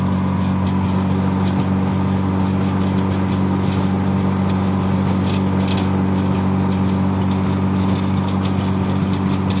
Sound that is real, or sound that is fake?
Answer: real